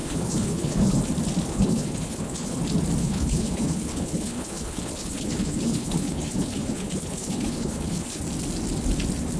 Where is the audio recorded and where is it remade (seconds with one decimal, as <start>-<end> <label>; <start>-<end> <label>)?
0.0-1.0 remade; 1.0-1.5 recorded; 1.5-2.6 remade; 2.6-3.0 recorded; 3.0-8.2 remade; 8.2-9.4 recorded

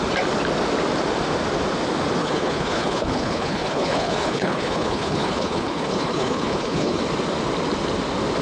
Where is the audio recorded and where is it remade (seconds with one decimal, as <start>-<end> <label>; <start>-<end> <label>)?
0.0-2.2 recorded; 2.2-7.0 remade; 7.0-8.4 recorded

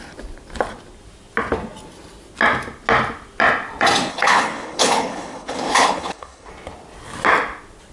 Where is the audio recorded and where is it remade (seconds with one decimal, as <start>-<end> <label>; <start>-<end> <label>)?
0.0-4.1 recorded; 4.1-6.5 remade; 6.5-7.9 recorded

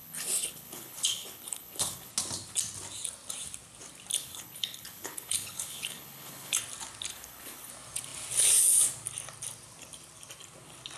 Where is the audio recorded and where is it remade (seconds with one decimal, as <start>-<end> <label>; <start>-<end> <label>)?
0.0-2.1 remade; 2.1-4.1 recorded; 4.1-6.6 remade; 6.6-7.1 recorded; 7.1-7.7 remade; 7.7-11.0 recorded

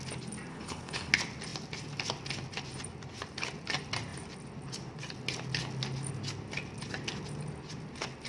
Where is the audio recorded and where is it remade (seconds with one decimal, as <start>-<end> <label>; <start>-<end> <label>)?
0.0-0.5 recorded; 0.5-1.1 remade; 1.1-8.3 recorded

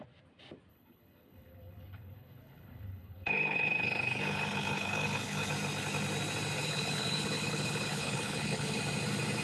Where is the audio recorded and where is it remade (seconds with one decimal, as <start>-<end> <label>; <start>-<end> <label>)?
0.0-0.7 recorded; 0.7-5.5 remade; 5.5-6.6 recorded; 6.6-8.8 remade; 8.8-9.4 recorded

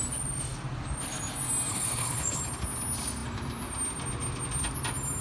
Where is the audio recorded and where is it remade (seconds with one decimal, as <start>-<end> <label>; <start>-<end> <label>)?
0.0-1.7 recorded; 1.7-2.4 remade; 2.4-5.2 recorded